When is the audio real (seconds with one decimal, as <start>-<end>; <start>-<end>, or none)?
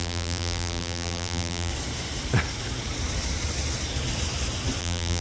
1.7-4.8